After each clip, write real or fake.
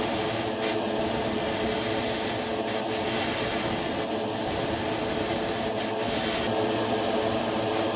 real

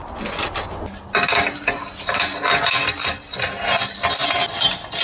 real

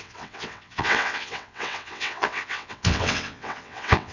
fake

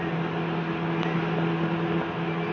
real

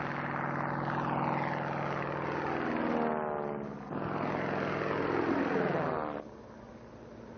real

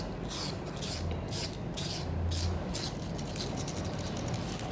real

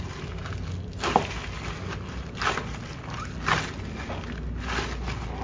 real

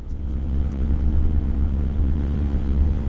fake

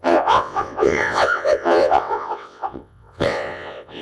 fake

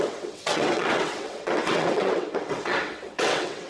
fake